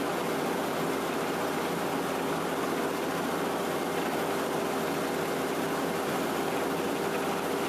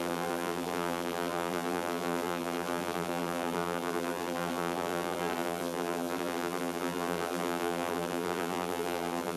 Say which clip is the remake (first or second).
second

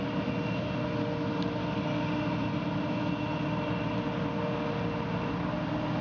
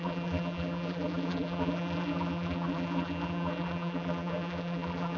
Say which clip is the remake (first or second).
second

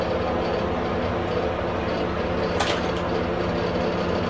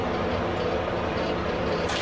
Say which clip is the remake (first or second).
second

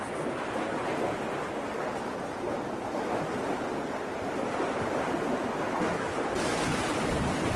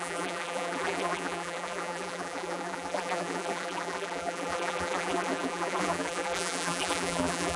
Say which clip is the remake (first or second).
second